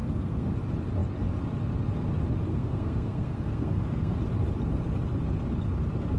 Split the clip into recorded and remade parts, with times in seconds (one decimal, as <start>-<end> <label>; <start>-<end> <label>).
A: 0.0-0.5 remade; 0.5-2.5 recorded; 2.5-4.2 remade; 4.2-6.2 recorded

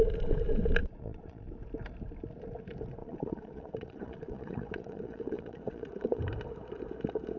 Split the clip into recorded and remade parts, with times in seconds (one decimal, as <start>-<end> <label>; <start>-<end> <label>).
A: 0.0-0.8 recorded; 0.8-1.5 remade; 1.5-3.0 recorded; 3.0-6.2 remade; 6.2-7.4 recorded

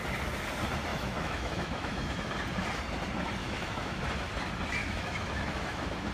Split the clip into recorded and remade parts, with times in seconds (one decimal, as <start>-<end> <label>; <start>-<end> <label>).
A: 0.0-0.9 recorded; 0.9-2.3 remade; 2.3-3.4 recorded; 3.4-4.0 remade; 4.0-4.8 recorded; 4.8-6.1 remade

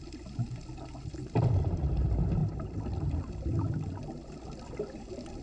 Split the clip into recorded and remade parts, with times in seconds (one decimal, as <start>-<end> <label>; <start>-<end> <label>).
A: 0.0-5.4 recorded

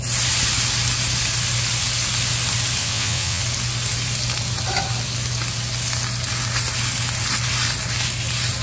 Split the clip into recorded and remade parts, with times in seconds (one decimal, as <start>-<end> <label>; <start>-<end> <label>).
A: 0.0-2.8 recorded; 2.8-3.4 remade; 3.4-8.6 recorded